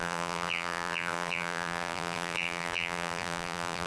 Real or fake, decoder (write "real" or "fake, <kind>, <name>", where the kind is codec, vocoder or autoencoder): fake, vocoder, BigVGAN v2